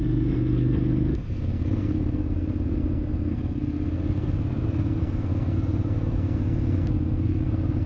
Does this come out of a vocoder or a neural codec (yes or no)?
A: yes